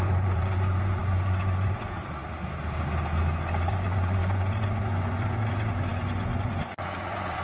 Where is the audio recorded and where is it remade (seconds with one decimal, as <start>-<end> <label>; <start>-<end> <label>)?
0.0-2.4 remade; 2.4-3.7 recorded; 3.7-7.4 remade